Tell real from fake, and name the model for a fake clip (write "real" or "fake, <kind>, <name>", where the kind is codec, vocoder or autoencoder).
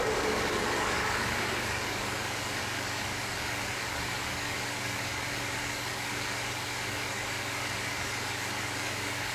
fake, codec, DAC